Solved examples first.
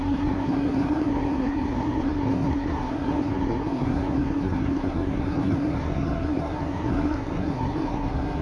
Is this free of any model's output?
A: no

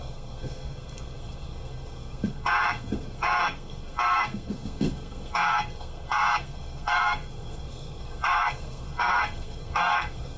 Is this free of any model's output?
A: no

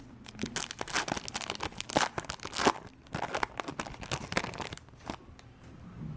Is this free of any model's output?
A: yes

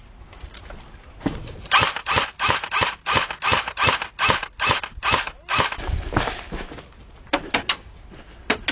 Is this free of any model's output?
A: yes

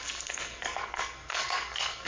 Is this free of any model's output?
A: no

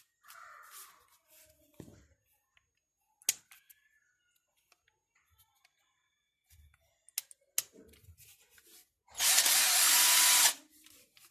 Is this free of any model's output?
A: yes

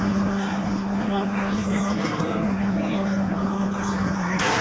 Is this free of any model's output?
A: no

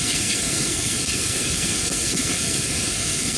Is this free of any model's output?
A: no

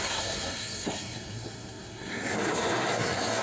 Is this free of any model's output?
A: no